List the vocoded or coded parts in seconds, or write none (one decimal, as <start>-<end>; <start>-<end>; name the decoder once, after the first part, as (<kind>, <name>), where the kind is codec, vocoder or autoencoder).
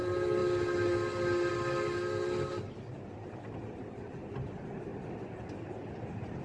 none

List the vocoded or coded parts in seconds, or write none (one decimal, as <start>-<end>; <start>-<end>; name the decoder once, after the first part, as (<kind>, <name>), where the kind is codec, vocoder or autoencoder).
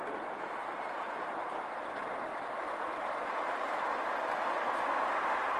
2.3-3.7 (vocoder, BigVGAN v2)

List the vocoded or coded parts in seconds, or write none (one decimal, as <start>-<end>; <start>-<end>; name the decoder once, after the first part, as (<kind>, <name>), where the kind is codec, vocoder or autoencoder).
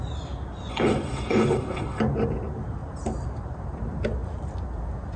0.7-2.0 (codec, HILCodec)